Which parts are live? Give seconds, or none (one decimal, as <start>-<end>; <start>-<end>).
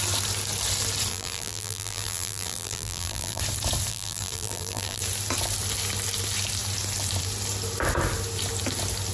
0.0-1.1; 3.4-3.9; 5.0-9.1